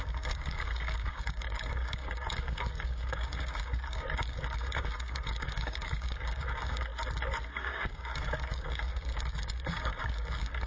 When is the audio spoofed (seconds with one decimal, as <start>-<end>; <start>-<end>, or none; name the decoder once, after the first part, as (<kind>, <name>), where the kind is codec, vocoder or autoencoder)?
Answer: 0.0-6.9 (codec, DAC); 7.6-10.7